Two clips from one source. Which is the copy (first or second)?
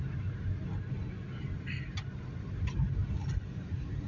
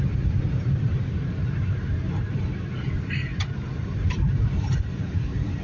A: second